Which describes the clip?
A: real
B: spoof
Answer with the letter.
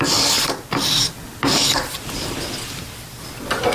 A